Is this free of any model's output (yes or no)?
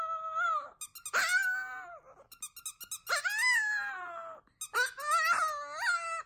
yes